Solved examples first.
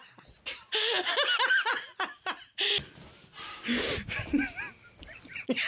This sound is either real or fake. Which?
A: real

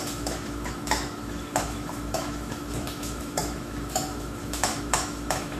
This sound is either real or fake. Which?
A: fake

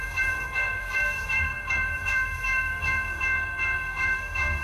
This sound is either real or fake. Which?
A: fake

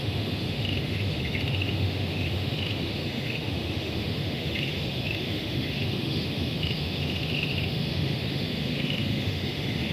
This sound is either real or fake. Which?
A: fake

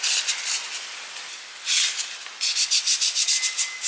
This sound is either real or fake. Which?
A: real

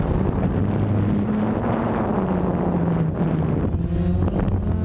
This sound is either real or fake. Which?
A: real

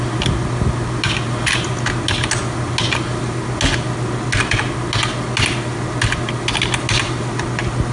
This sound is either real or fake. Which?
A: real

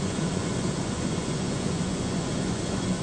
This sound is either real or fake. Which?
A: fake